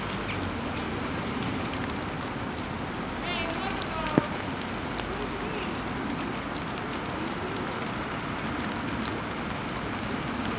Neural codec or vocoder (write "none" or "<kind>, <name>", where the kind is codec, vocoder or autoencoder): none